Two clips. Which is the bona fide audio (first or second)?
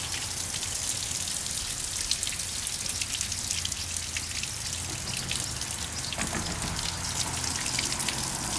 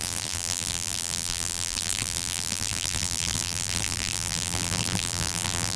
first